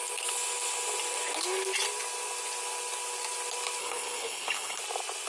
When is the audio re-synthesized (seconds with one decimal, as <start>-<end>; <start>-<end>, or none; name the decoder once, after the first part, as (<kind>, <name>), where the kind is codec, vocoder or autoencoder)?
3.8-4.8 (codec, HILCodec)

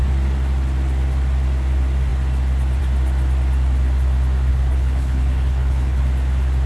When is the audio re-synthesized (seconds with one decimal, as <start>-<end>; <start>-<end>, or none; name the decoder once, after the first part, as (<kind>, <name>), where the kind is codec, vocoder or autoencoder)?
4.5-6.0 (codec, HILCodec)

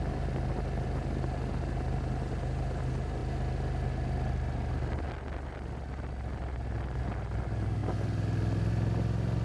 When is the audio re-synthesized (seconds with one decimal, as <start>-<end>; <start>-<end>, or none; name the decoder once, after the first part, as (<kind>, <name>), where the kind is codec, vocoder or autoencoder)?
none

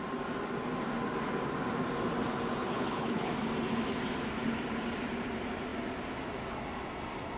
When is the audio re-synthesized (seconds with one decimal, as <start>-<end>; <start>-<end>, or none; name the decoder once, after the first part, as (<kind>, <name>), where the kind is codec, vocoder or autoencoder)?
2.6-3.3 (codec, HILCodec)

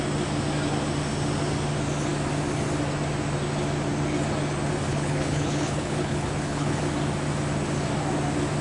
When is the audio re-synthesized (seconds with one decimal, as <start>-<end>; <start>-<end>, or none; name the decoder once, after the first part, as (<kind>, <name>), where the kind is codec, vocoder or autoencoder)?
4.9-6.8 (codec, HILCodec)

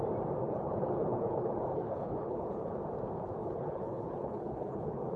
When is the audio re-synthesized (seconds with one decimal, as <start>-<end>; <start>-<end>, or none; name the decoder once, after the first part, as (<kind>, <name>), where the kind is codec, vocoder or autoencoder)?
0.4-2.7 (codec, HILCodec); 3.4-5.2